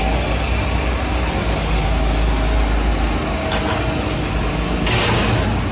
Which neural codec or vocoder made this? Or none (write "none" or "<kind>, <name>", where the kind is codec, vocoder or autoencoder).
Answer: none